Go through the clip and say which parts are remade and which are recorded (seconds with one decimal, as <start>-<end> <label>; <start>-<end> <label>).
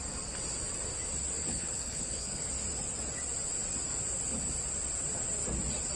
0.0-1.4 recorded; 1.4-2.5 remade; 2.5-6.0 recorded